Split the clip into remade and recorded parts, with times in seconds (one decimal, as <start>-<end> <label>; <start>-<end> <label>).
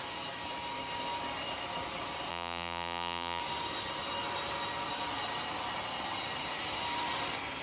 0.0-2.3 recorded; 2.3-3.4 remade; 3.4-7.6 recorded